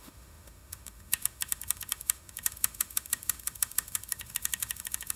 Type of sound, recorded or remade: remade